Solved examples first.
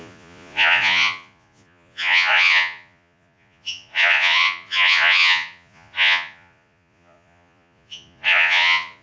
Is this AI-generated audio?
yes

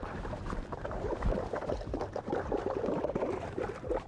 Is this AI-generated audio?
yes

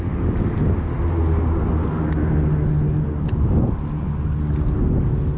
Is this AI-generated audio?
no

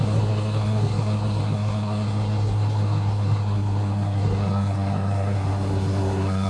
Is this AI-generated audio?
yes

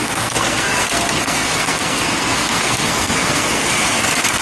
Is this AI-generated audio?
yes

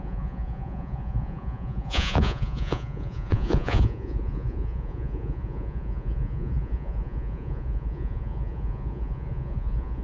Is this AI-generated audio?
yes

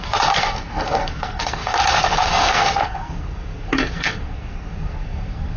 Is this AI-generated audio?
yes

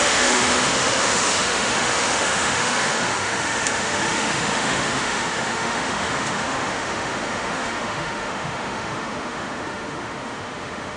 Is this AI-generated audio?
yes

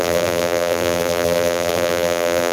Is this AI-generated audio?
yes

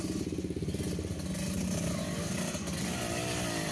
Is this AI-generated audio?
no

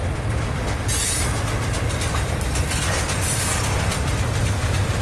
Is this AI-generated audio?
no